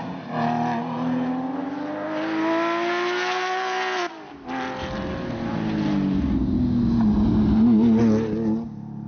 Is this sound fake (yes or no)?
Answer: no